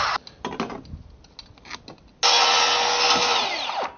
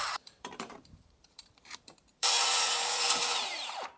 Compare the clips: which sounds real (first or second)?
first